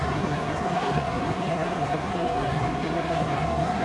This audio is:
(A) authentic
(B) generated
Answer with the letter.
B